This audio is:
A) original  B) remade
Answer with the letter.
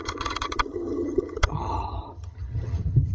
B